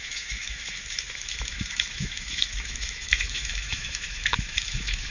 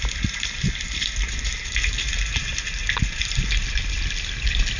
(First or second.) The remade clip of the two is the first